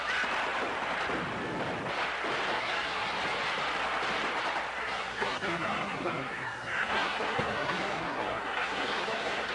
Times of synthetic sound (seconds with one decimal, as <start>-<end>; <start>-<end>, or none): 2.5-3.1; 4.8-9.5